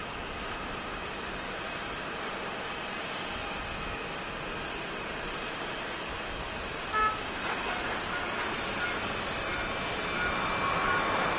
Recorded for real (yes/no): yes